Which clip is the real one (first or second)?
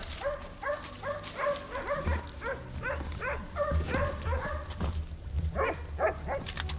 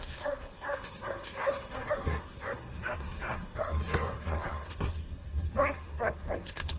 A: first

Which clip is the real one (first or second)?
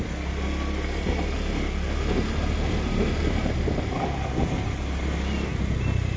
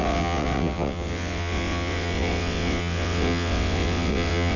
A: first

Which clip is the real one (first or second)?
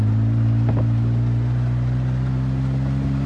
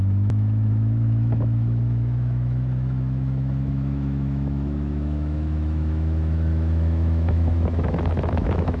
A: first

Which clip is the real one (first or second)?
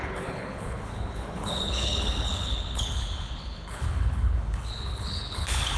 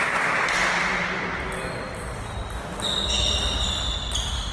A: second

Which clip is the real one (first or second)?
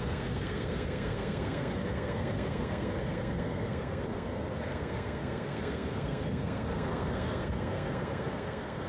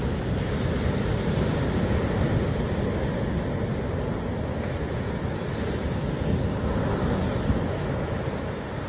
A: second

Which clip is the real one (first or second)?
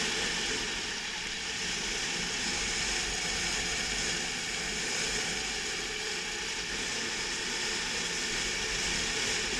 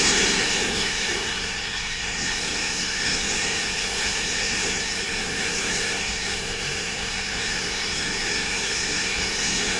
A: first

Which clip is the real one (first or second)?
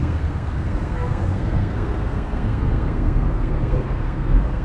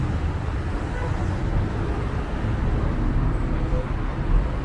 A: second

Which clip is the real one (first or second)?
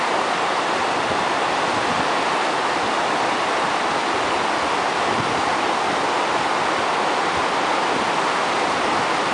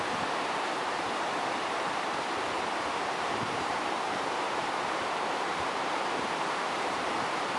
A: first